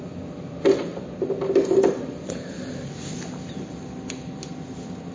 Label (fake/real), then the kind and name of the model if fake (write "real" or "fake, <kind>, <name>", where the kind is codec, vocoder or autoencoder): real